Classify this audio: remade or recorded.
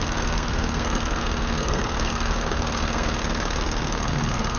remade